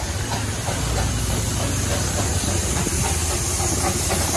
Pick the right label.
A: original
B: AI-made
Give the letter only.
A